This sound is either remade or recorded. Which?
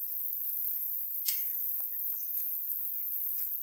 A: remade